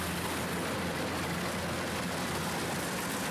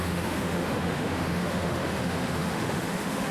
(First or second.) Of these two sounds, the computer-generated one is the second